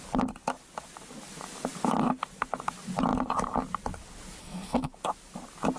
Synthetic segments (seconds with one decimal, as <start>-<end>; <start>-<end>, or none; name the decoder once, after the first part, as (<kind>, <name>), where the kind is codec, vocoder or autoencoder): 4.4-4.9 (codec, SNAC)